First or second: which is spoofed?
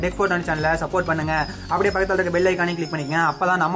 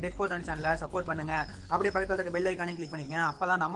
second